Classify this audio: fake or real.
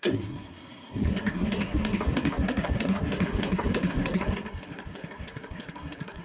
fake